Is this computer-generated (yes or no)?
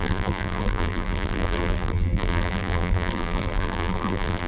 yes